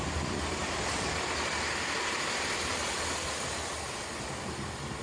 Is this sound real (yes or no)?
yes